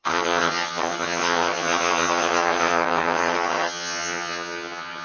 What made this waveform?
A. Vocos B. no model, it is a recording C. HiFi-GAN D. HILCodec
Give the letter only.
C